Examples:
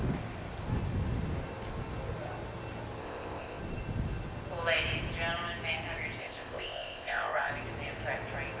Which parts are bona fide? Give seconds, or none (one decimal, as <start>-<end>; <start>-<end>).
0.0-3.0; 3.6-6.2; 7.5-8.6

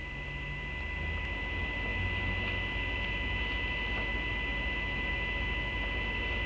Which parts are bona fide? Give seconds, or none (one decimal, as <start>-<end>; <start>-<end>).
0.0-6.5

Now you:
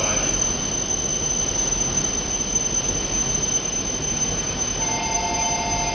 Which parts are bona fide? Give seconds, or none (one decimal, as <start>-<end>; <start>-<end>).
0.0-5.9

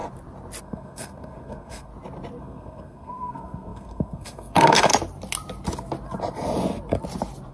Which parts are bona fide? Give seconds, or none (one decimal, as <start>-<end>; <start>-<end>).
0.0-0.6; 1.9-2.4; 4.9-7.5

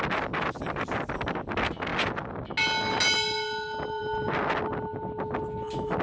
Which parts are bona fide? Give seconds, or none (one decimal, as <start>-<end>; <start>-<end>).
0.0-6.0

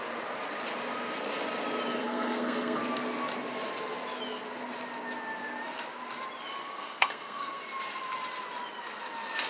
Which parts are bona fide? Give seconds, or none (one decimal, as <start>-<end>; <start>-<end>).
0.0-2.0; 2.8-6.6; 7.6-9.5